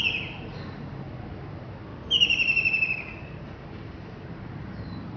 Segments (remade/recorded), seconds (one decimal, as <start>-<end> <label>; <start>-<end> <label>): 0.0-1.9 recorded; 1.9-4.6 remade; 4.6-5.2 recorded